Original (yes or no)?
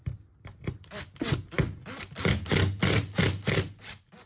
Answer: yes